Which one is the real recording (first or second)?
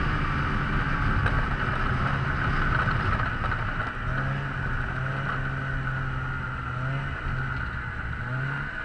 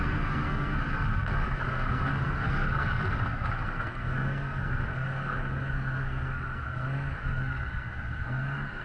first